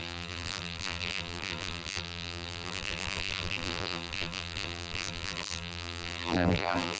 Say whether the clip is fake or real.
fake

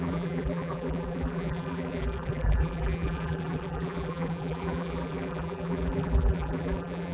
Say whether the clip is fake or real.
fake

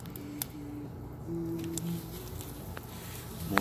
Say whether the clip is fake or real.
real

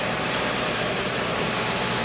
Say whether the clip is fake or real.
fake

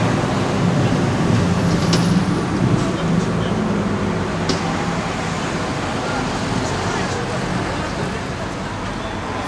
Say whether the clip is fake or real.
real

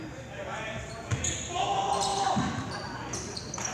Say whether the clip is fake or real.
real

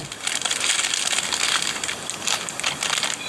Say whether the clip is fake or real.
real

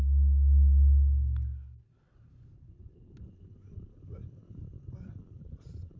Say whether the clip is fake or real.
real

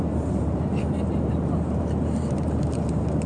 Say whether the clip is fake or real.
fake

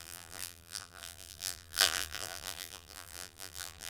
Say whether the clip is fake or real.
fake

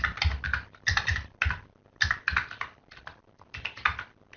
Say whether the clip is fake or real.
real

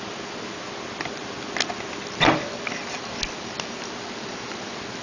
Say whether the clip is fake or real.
real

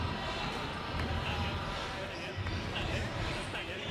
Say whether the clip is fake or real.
real